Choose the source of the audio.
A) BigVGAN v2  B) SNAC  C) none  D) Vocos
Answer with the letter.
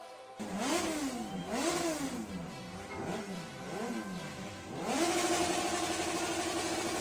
C